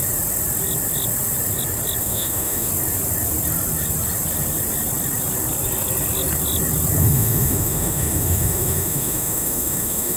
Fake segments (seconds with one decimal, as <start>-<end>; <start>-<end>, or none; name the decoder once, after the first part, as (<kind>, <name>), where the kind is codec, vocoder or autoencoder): 2.0-2.7 (autoencoder, DAC-VAE); 7.0-10.2